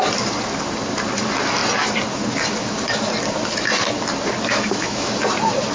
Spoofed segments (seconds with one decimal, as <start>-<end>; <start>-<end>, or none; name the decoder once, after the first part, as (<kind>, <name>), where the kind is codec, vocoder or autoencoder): 4.5-5.1 (autoencoder, DAC-VAE)